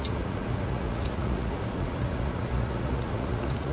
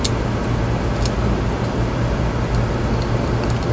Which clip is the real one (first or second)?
second